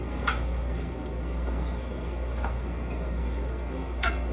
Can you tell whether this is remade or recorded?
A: remade